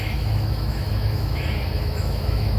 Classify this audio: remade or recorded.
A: remade